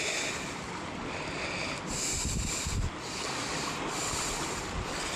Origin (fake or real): real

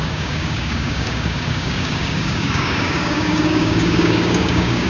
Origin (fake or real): fake